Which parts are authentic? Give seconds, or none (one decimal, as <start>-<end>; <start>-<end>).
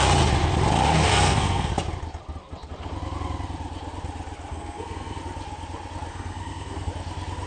0.0-1.1; 1.7-4.5; 5.2-6.1; 6.9-7.5